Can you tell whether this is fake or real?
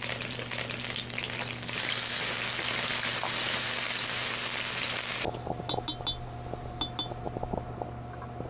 real